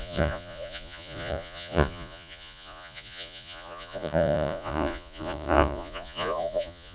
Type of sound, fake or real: fake